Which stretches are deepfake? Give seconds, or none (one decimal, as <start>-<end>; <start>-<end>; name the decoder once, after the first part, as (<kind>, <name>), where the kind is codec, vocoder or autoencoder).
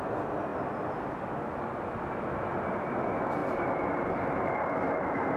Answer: none